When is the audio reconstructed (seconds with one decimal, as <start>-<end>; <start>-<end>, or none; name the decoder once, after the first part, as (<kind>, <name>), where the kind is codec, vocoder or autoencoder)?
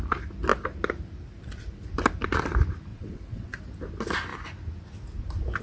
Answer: 2.9-3.6 (vocoder, WaveNeXt)